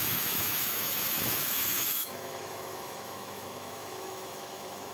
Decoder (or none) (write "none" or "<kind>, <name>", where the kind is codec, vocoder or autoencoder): autoencoder, DAC-VAE